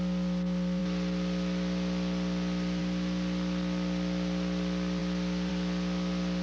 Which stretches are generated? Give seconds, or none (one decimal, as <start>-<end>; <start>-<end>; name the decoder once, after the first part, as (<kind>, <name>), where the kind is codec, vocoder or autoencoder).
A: none